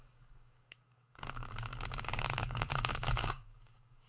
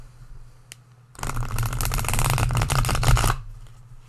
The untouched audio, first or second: second